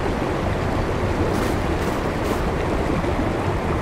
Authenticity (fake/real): real